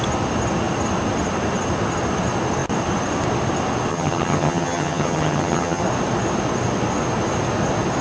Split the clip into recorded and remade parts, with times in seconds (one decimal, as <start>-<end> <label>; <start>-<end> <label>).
0.0-3.9 recorded; 3.9-5.8 remade; 5.8-8.0 recorded